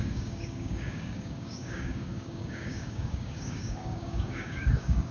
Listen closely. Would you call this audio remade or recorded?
remade